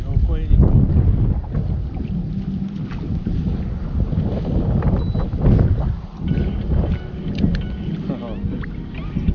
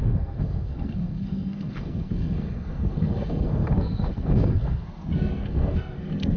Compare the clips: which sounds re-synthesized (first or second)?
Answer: second